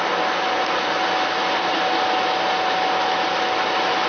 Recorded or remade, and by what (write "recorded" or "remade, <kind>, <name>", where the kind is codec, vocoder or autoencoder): recorded